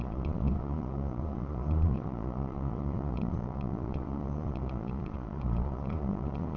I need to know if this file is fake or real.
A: fake